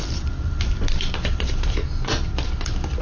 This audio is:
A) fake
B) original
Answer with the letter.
A